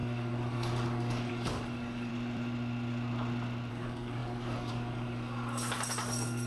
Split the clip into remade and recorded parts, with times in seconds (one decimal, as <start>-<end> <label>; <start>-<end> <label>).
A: 0.0-2.1 remade; 2.1-3.7 recorded; 3.7-6.5 remade